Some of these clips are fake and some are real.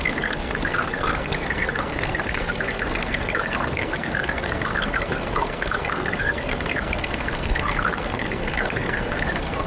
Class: fake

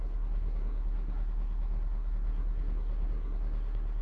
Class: fake